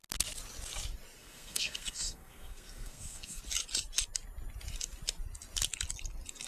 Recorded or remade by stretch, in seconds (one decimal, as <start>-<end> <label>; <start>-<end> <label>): 0.0-1.2 recorded; 1.2-3.4 remade; 3.4-6.5 recorded